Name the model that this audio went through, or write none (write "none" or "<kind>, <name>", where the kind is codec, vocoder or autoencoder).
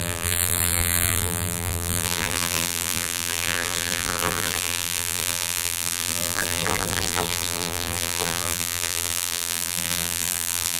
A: vocoder, BigVGAN v2